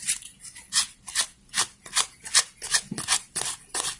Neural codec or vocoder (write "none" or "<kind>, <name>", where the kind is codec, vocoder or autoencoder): none